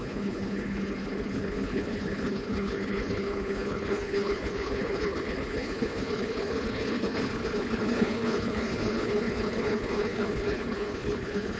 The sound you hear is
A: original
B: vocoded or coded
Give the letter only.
B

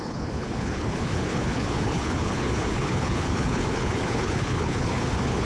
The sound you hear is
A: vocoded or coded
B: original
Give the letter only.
A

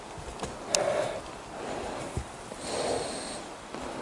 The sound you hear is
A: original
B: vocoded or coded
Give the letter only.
A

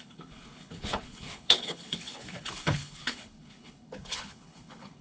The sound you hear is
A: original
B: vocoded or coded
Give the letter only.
B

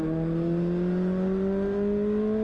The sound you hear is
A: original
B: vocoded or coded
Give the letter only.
A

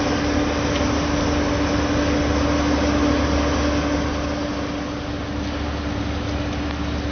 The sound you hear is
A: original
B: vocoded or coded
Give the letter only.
A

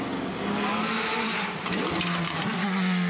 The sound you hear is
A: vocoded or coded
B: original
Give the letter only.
B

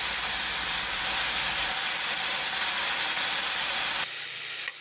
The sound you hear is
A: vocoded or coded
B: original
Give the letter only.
B